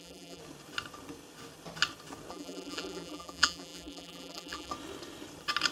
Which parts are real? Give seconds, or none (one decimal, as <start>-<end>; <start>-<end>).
0.4-2.3; 4.7-5.7